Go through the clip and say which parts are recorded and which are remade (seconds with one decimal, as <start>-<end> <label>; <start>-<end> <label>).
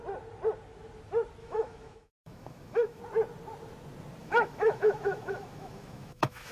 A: 0.0-1.4 recorded; 1.4-3.0 remade; 3.0-4.2 recorded; 4.2-6.5 remade